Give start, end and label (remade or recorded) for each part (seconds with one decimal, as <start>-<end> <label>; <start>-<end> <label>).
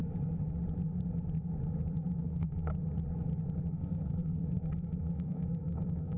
0.0-2.2 recorded; 2.2-2.7 remade; 2.7-3.7 recorded; 3.7-6.2 remade